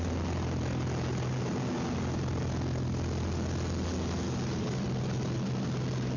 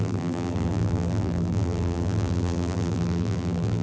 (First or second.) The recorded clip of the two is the first